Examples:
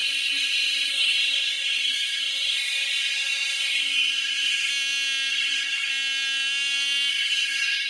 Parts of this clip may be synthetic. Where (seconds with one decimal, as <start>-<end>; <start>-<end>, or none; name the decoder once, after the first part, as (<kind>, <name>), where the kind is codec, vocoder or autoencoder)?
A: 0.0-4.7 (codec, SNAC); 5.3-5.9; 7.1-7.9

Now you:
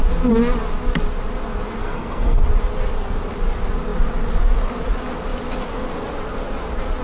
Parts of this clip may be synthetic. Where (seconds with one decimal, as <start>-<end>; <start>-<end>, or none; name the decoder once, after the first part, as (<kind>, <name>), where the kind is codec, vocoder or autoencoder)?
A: 1.8-2.4 (codec, SNAC)

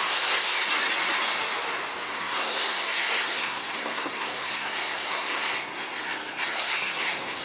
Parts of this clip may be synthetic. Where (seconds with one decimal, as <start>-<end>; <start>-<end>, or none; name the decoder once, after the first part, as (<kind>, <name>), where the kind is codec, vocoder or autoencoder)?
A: 0.0-0.6 (codec, SNAC); 2.1-7.4